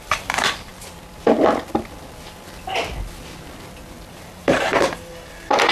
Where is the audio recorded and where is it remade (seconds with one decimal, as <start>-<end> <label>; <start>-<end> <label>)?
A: 0.0-0.7 remade; 0.7-4.1 recorded; 4.1-5.7 remade